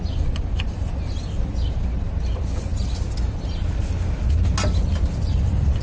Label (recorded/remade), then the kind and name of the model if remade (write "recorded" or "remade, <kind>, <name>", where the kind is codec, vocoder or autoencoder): recorded